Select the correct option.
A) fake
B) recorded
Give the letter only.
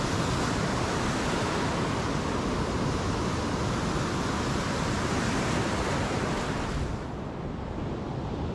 B